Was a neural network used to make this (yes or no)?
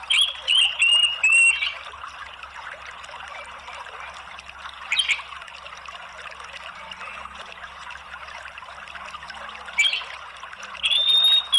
no